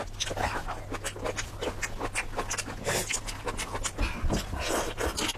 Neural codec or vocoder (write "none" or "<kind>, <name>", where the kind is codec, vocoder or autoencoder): none